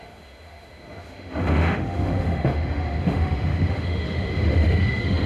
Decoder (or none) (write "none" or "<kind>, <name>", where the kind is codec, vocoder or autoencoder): autoencoder, DAC-VAE